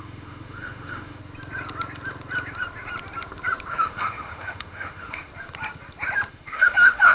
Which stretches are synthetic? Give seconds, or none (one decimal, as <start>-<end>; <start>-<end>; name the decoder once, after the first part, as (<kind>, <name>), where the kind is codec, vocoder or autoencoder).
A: 0.0-1.2 (autoencoder, DAC-VAE); 3.7-5.3; 6.3-7.1